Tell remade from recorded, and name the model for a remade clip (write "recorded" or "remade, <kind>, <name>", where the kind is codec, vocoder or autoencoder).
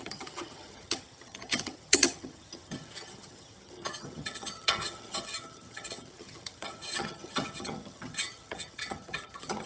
remade, vocoder, HiFi-GAN